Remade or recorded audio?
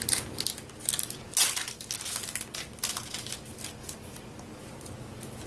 recorded